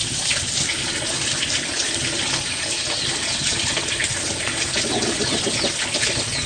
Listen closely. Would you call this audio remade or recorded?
recorded